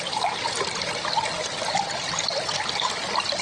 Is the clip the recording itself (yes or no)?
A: yes